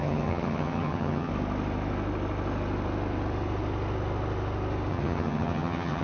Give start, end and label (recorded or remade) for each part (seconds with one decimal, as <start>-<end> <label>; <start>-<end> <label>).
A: 0.0-1.3 remade; 1.3-4.9 recorded; 4.9-6.0 remade